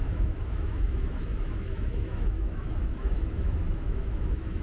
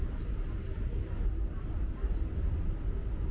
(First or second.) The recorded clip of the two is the second